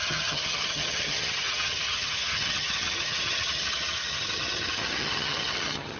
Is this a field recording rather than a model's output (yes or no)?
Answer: no